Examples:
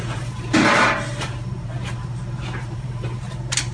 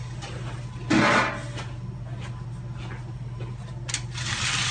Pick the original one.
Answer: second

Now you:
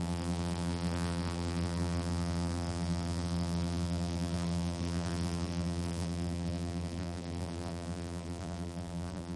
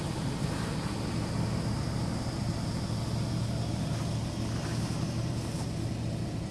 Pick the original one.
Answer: second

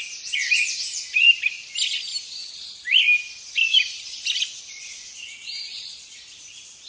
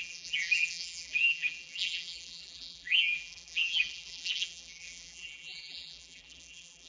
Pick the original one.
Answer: first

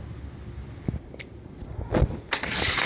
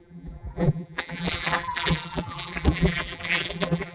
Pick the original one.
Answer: first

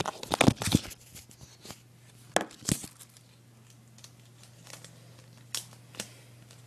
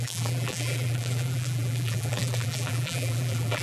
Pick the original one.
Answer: first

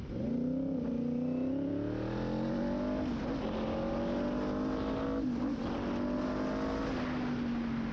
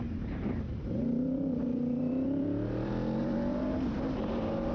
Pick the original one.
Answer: first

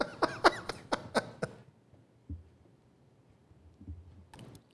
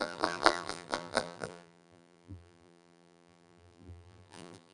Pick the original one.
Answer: first